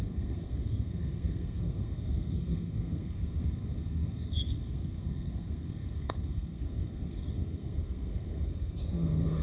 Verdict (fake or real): fake